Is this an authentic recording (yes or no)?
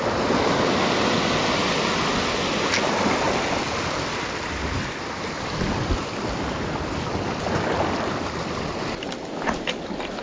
yes